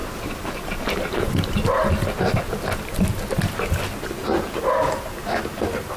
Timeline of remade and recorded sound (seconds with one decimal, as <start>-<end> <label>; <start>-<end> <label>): 0.0-6.0 recorded